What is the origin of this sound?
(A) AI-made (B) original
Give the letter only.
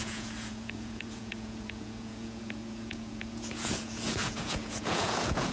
A